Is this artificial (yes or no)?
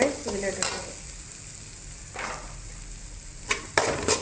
no